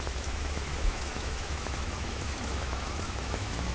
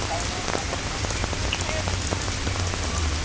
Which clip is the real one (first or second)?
second